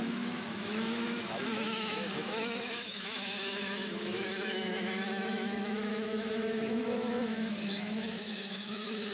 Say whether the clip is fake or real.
fake